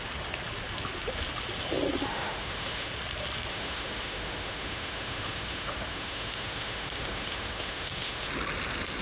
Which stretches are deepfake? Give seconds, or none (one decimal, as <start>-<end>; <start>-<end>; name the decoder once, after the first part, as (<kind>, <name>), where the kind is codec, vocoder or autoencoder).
2.1-2.9 (autoencoder, DAC-VAE); 3.5-8.3